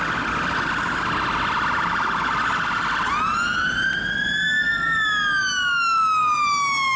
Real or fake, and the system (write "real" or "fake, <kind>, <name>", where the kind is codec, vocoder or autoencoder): real